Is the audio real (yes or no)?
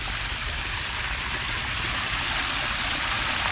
no